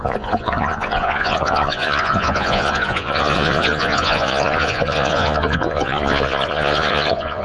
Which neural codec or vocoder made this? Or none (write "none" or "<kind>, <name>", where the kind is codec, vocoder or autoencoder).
vocoder, Vocos